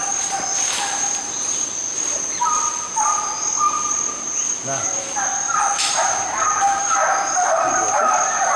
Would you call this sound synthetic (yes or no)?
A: no